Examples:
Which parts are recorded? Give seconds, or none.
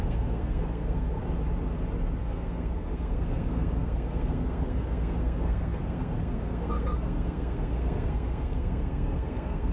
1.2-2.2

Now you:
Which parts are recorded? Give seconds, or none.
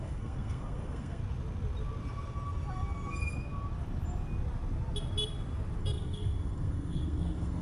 1.2-5.8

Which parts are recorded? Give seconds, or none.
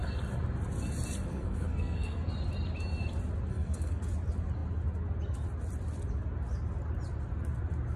0.0-1.3; 2.3-3.5; 4.0-8.0